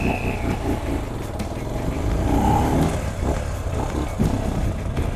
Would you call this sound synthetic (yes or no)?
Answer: no